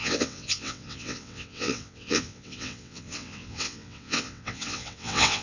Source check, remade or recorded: remade